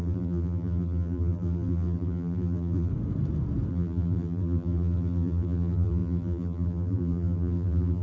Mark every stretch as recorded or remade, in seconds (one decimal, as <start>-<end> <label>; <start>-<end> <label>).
0.0-2.9 remade; 2.9-3.7 recorded; 3.7-8.0 remade